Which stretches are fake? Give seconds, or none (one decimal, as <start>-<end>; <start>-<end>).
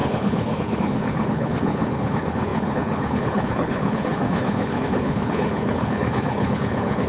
0.0-7.1